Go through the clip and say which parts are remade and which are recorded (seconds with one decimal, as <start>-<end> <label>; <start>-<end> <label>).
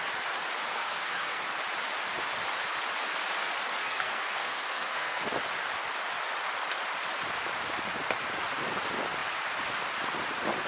0.0-0.7 recorded; 0.7-1.4 remade; 1.4-3.8 recorded; 3.8-5.3 remade; 5.3-10.7 recorded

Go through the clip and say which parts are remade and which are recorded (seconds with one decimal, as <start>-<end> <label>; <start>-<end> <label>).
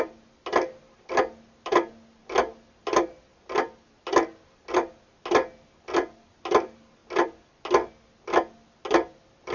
0.0-9.5 recorded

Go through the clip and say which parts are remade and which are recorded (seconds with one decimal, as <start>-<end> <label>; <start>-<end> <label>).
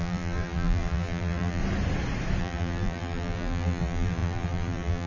0.0-1.6 remade; 1.6-2.4 recorded; 2.4-5.1 remade